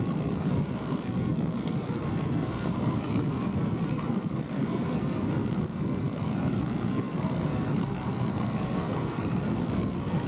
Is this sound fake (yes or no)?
yes